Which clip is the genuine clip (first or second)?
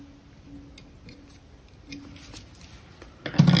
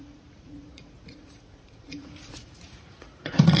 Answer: first